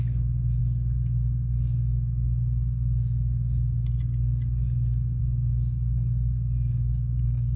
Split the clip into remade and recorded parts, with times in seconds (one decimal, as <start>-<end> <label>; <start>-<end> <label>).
0.0-7.6 recorded